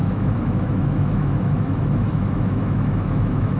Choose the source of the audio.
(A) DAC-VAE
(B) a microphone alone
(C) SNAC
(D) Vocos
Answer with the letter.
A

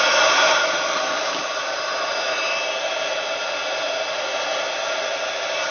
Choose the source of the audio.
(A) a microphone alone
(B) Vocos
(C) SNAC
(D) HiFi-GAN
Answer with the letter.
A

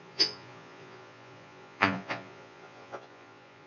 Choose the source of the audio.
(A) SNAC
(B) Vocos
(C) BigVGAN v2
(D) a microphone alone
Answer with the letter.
B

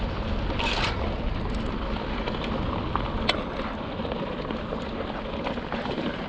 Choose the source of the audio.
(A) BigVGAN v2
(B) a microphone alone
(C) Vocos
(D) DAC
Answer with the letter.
B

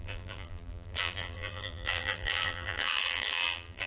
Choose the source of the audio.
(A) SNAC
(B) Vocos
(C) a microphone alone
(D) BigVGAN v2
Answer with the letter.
D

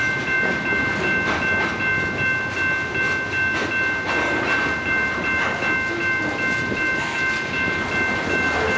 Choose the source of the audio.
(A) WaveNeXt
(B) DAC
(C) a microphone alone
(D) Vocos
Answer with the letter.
C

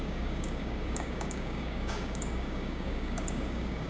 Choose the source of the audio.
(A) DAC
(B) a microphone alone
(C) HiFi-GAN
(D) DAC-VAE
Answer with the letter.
A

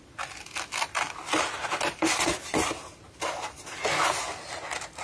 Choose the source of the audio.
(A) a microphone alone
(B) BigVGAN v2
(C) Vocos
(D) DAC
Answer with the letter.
A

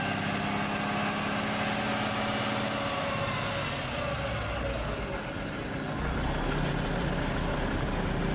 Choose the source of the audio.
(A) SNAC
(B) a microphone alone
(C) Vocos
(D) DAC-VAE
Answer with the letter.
B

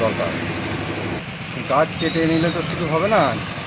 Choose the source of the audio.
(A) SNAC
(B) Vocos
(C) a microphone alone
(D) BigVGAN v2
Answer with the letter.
C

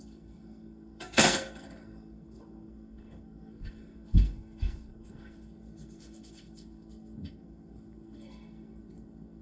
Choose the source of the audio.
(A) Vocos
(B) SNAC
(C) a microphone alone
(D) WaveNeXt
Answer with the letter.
B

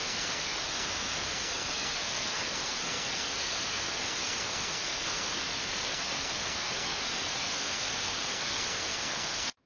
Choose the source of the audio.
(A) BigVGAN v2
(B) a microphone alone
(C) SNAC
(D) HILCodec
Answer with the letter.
C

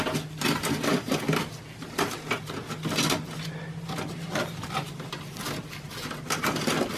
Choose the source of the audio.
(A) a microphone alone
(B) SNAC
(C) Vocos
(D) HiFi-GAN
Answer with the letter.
A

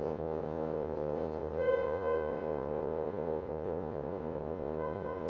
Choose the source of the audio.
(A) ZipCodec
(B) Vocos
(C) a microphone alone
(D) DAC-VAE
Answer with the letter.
B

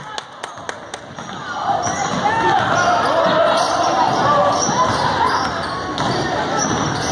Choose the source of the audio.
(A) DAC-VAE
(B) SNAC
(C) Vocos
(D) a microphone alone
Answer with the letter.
D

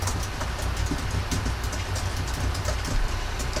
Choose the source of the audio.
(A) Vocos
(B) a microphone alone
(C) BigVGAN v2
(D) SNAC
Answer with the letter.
B